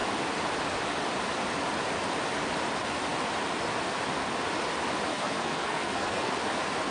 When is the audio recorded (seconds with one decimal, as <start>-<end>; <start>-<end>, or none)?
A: 0.0-5.1; 6.3-6.9

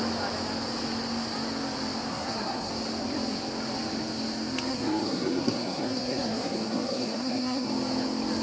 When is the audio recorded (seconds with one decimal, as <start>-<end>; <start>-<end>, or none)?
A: 0.0-2.1; 2.7-4.7; 7.7-8.4

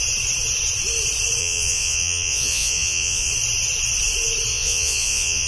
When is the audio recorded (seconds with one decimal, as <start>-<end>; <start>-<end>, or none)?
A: 0.0-1.4; 3.3-4.5

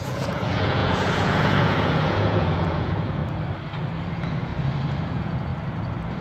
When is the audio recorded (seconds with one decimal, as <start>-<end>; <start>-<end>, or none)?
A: 3.2-4.1; 4.5-5.1; 5.5-6.2

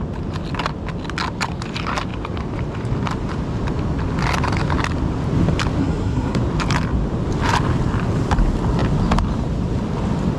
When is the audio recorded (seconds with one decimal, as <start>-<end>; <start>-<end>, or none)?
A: 0.0-5.8; 6.4-10.4

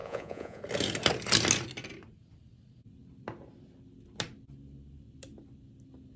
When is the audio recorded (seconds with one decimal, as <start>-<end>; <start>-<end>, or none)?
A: 0.6-6.2

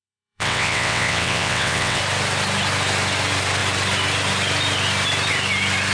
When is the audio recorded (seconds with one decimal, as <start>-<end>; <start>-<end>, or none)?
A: 2.0-5.9

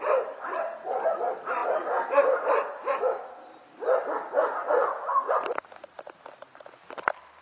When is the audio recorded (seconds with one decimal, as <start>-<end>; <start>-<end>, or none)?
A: 0.0-7.4